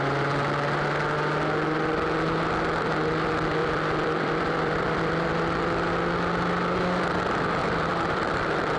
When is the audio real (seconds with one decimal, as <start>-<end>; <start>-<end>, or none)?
0.0-3.6; 5.3-7.6